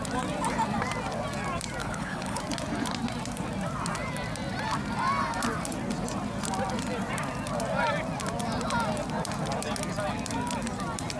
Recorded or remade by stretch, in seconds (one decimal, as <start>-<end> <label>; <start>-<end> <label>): 0.0-1.8 recorded; 1.8-2.4 remade; 2.4-11.2 recorded